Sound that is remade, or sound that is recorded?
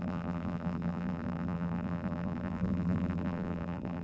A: remade